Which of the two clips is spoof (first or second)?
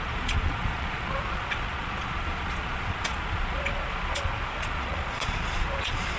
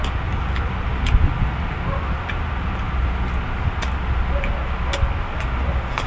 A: first